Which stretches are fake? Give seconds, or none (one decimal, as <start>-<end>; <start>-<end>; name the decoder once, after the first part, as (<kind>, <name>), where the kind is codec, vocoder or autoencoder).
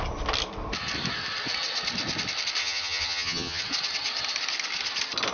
2.6-3.6 (vocoder, HiFi-GAN)